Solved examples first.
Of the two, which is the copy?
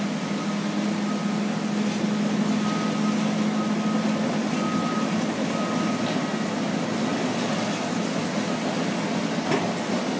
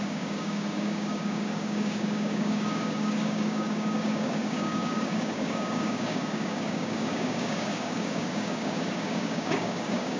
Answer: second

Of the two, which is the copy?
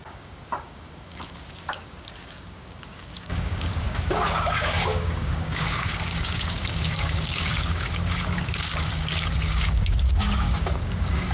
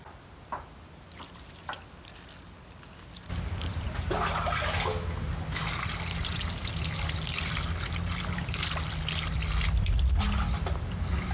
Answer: first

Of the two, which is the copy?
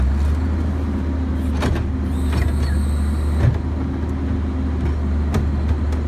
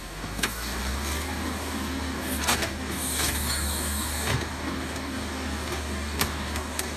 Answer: second